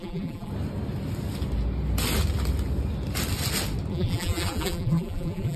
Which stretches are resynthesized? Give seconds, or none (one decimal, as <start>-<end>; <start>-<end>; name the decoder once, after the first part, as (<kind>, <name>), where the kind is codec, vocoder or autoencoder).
0.0-0.5 (vocoder, BigVGAN v2); 3.9-5.6